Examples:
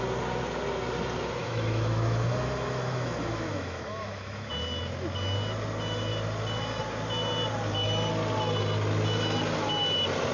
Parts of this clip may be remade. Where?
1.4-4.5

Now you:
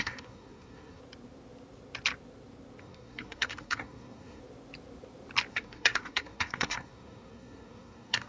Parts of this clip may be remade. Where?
0.0-1.0; 2.8-4.4; 5.5-8.3

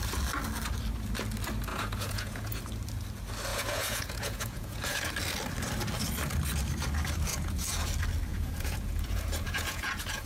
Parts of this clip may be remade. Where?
1.7-2.6; 3.5-5.1; 7.3-7.9; 8.3-10.3

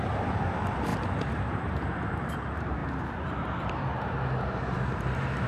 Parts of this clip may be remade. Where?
0.0-0.9; 1.6-5.5

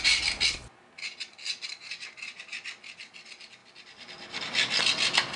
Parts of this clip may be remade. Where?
none

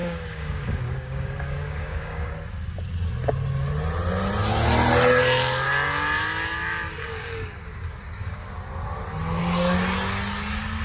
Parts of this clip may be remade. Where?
0.0-2.3; 7.0-8.5

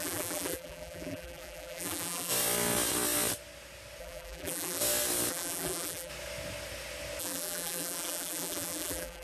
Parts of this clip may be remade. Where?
0.0-2.3; 4.0-4.8; 5.3-6.1; 7.2-9.2